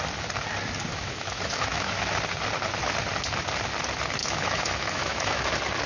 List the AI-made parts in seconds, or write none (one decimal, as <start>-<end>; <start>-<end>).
0.9-2.0; 4.2-5.5